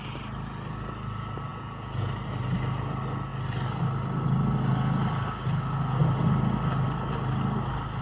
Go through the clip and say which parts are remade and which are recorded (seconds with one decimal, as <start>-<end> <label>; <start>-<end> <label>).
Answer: 0.0-1.5 recorded; 1.5-2.1 remade; 2.1-8.0 recorded